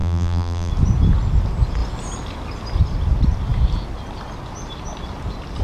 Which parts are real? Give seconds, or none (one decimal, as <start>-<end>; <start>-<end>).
0.7-5.6